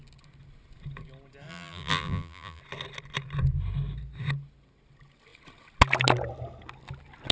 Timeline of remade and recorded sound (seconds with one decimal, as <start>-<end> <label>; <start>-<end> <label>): 0.0-1.5 recorded; 1.5-2.6 remade; 2.6-7.3 recorded